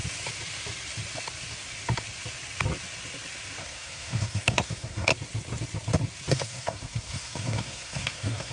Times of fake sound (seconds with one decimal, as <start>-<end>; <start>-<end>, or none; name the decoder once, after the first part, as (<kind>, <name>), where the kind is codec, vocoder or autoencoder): 3.6-5.1 (codec, SNAC); 6.3-8.5